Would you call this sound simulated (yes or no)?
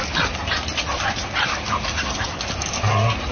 no